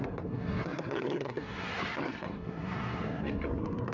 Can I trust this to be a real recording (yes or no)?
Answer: no